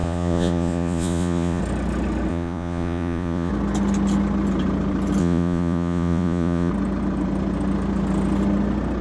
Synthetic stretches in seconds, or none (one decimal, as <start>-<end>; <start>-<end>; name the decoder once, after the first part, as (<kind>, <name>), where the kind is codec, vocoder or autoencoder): 0.0-1.6 (vocoder, Vocos); 2.3-3.5; 5.2-6.7